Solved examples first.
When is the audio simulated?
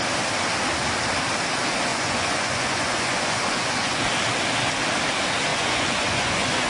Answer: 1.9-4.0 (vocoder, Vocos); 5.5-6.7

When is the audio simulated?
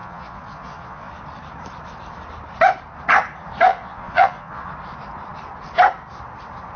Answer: 0.0-1.1 (vocoder, Vocos); 3.7-4.7